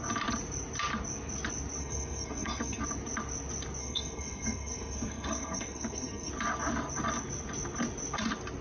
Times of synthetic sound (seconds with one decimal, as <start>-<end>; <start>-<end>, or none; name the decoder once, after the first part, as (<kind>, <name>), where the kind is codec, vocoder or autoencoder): 1.8-2.8 (codec, SNAC); 3.8-6.3